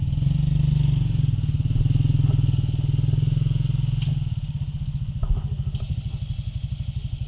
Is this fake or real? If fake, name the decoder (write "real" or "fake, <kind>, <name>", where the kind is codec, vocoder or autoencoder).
real